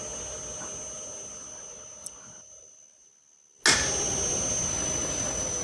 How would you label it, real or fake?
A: real